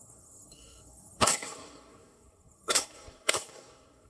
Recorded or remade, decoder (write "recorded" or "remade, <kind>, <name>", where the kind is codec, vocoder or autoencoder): remade, codec, SNAC